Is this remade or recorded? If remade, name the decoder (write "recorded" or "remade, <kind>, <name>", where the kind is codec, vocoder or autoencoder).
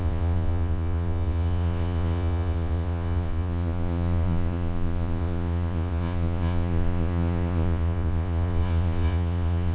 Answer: remade, vocoder, Vocos